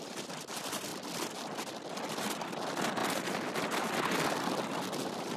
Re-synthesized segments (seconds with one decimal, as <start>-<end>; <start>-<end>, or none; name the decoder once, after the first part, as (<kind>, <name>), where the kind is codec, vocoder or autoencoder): 0.0-0.9 (vocoder, BigVGAN v2); 2.3-3.0; 3.5-5.4